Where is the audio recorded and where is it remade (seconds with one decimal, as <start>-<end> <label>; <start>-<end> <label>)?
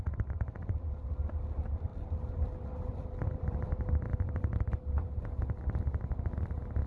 0.0-1.9 recorded; 1.9-5.2 remade; 5.2-6.9 recorded